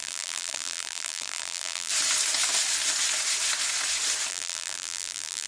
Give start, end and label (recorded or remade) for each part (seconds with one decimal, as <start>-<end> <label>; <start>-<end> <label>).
0.0-1.9 remade; 1.9-4.3 recorded; 4.3-5.5 remade